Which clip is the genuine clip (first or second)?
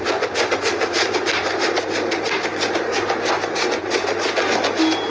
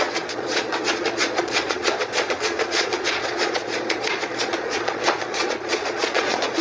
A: first